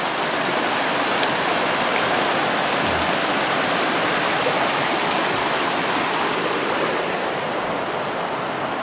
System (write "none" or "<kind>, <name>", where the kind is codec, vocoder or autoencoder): none